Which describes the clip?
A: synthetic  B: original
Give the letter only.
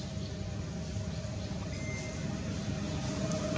B